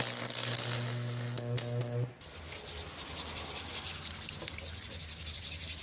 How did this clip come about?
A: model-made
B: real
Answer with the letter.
B